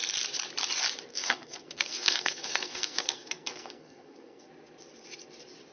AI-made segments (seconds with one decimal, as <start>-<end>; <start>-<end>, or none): 1.1-4.5